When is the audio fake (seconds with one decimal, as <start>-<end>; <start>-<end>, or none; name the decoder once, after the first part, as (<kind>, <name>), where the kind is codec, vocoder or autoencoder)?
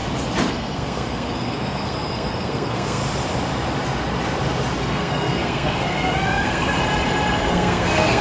0.5-3.0 (codec, SNAC); 4.8-6.8; 7.5-8.2